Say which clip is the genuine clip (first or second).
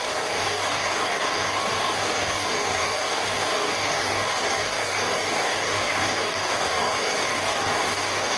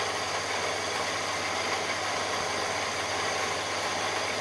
second